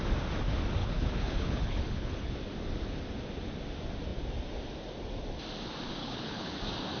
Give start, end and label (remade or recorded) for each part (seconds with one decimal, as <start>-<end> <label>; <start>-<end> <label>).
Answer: 0.0-0.8 recorded; 0.8-2.3 remade; 2.3-6.0 recorded; 6.0-6.6 remade; 6.6-7.0 recorded